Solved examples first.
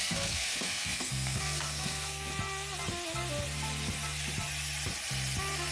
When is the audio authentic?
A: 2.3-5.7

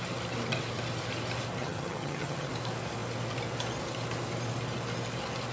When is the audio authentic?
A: 0.0-1.6; 2.5-5.5

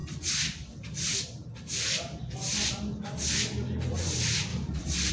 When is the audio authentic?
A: 0.0-4.5

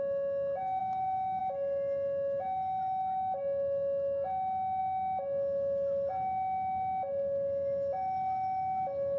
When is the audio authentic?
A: 0.0-0.8; 1.4-9.2